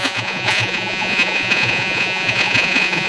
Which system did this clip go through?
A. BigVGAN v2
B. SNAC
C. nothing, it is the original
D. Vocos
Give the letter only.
D